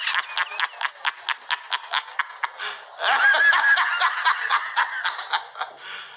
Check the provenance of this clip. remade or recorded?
recorded